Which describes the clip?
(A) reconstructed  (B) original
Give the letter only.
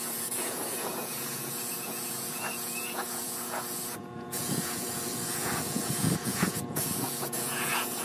A